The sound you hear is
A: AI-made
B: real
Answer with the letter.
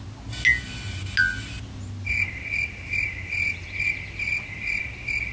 B